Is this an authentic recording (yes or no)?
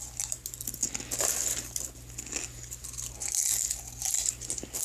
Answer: yes